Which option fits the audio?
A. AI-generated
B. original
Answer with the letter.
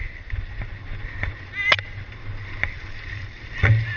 B